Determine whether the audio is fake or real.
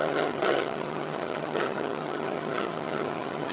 fake